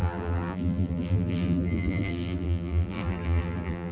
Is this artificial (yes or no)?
yes